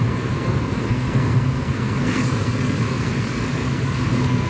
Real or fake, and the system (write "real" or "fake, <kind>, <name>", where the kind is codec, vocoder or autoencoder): fake, codec, SNAC